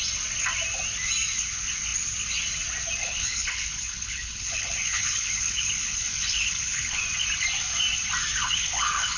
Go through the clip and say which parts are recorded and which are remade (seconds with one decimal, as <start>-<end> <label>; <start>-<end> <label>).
0.0-3.0 recorded; 3.0-7.0 remade; 7.0-8.4 recorded; 8.4-9.2 remade